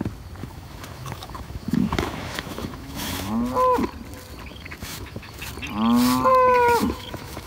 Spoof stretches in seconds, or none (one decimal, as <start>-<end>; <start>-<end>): 0.4-3.3; 4.5-5.4; 6.3-7.5